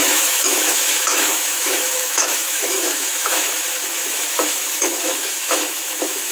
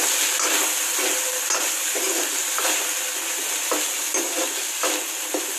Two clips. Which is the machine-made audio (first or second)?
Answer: first